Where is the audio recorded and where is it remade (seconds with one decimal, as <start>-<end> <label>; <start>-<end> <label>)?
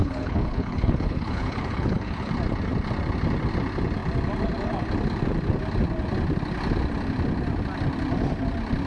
0.0-2.3 remade; 2.3-8.9 recorded